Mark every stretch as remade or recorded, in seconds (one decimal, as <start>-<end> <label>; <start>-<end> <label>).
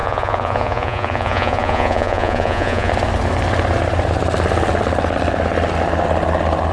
0.0-2.9 remade; 2.9-6.7 recorded